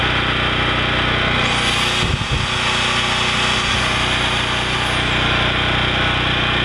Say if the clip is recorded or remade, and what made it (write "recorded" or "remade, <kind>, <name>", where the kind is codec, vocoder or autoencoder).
recorded